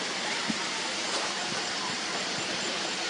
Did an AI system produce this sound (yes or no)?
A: yes